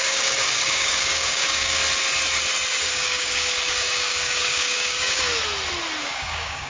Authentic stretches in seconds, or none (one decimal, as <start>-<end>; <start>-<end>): 1.8-2.8; 5.3-6.0

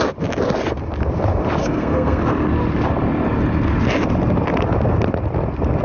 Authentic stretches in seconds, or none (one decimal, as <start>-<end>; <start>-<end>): 0.0-1.6; 2.2-5.8

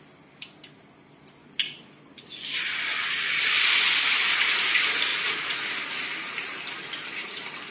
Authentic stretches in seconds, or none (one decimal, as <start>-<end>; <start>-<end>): 0.0-5.1; 5.7-7.7

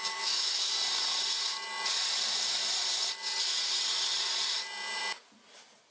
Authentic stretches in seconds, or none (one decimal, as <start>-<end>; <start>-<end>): 0.7-5.9

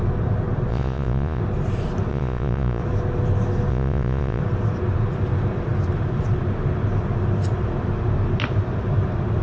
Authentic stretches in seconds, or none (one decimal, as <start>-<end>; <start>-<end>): 0.0-0.7; 1.4-2.1; 2.8-3.7; 4.4-9.4